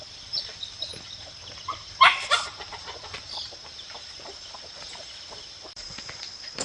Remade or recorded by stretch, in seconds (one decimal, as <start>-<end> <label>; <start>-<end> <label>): 0.0-0.9 remade; 0.9-4.5 recorded; 4.5-6.6 remade